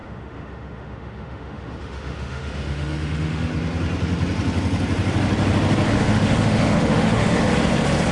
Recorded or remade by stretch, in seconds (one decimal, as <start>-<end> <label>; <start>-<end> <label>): 0.0-3.5 remade; 3.5-5.9 recorded; 5.9-7.5 remade; 7.5-8.1 recorded